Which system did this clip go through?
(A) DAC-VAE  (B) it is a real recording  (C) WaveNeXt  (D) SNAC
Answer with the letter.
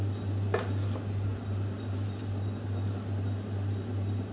B